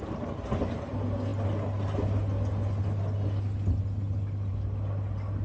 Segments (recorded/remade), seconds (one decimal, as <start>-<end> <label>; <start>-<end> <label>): 0.0-5.4 recorded